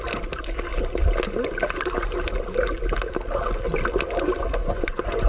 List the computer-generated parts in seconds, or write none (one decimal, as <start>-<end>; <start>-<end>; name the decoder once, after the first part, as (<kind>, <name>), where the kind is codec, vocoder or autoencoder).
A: 4.6-5.3 (vocoder, Vocos)